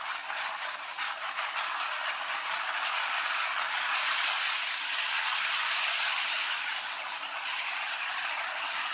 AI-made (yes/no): no